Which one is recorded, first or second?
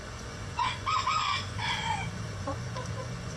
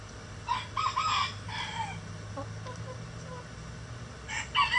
second